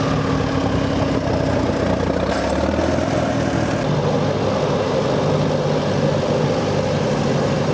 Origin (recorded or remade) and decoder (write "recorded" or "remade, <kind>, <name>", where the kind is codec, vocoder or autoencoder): recorded